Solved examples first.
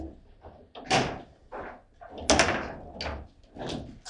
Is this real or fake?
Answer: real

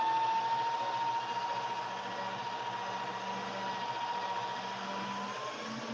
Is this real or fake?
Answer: real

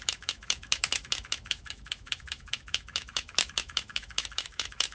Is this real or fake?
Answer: fake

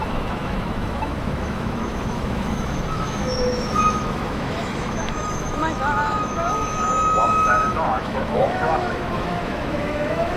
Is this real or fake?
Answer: fake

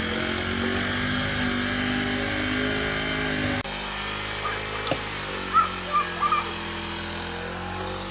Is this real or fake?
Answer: real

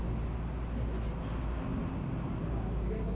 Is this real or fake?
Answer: real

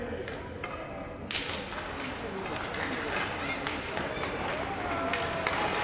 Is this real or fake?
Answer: real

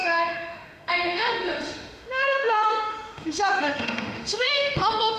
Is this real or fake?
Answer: fake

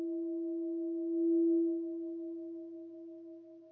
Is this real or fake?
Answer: real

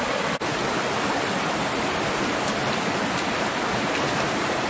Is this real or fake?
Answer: real